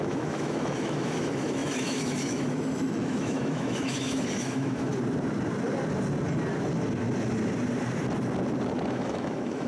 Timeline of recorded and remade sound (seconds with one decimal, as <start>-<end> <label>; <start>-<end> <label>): 0.0-4.9 remade; 4.9-8.9 recorded; 8.9-9.7 remade